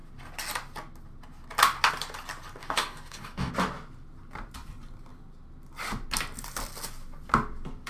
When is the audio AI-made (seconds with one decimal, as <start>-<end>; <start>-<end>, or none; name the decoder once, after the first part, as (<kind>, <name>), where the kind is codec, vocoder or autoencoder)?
2.6-3.5 (codec, DAC)